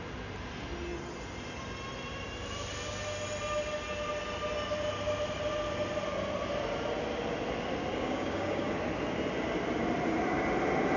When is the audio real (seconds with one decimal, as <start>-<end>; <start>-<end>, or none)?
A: 0.0-7.9; 8.7-11.0